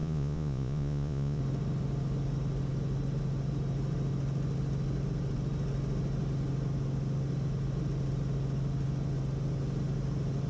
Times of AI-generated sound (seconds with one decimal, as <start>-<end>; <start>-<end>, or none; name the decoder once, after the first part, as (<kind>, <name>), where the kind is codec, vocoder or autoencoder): 0.0-1.4 (vocoder, Vocos)